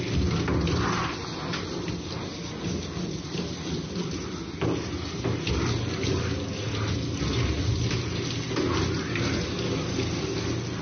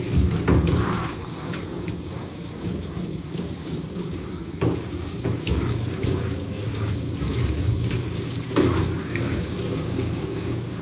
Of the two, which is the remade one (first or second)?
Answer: second